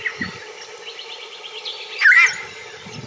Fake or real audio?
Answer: real